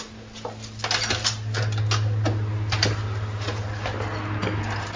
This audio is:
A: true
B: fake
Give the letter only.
A